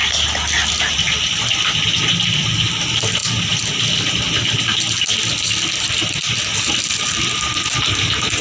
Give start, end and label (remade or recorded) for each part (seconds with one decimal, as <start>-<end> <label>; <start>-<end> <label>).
0.0-8.4 recorded